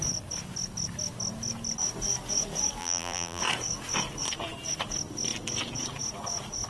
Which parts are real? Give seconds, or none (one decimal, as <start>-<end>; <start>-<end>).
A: 0.0-2.8; 3.4-6.7

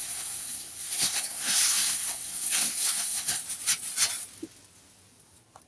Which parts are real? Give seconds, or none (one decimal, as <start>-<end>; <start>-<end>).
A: 3.4-5.7

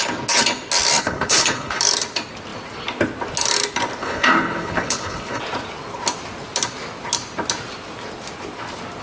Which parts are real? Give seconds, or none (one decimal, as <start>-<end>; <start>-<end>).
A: 0.0-1.0; 1.8-4.0; 5.4-9.0